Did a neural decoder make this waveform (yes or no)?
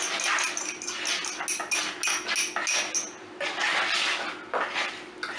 no